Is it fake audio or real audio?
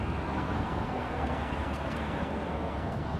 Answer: fake